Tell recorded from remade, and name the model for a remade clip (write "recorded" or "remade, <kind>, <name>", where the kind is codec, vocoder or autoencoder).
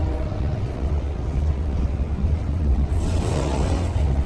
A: remade, vocoder, WaveNeXt